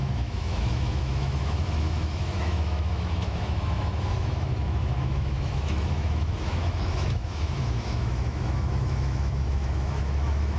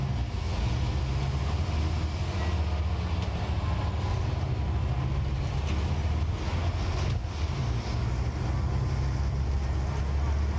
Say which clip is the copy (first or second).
first